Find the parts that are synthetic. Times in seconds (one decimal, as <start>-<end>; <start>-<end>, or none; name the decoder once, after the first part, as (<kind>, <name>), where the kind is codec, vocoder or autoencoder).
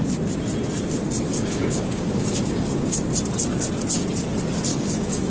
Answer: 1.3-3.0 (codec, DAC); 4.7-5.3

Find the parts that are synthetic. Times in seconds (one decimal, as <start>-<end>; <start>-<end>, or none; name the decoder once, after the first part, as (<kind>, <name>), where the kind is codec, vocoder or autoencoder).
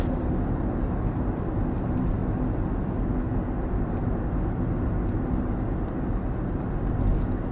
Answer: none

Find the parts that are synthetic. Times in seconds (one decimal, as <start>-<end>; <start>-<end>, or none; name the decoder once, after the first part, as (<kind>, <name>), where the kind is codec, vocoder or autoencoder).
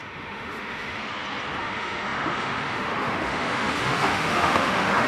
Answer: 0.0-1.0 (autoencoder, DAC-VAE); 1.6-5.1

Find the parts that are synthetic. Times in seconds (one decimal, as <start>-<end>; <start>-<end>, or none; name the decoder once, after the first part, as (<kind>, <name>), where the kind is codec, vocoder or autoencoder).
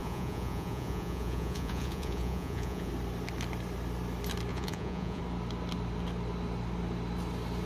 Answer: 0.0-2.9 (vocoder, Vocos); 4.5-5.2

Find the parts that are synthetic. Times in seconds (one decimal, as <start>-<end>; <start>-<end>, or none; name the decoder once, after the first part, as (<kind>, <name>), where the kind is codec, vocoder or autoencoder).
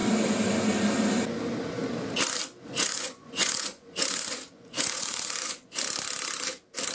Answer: 2.7-5.8 (vocoder, Vocos)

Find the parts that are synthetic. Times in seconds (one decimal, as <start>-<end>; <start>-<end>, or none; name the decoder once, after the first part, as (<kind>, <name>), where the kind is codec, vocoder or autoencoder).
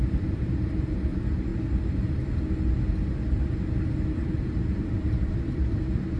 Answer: 0.0-1.5 (vocoder, BigVGAN v2); 4.9-6.2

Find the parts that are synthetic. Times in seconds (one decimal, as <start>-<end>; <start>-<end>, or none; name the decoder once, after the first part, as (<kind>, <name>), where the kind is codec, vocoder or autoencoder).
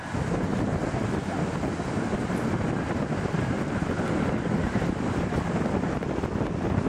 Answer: none